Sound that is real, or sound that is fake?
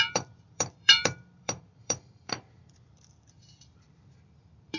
fake